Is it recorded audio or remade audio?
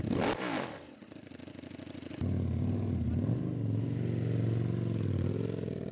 recorded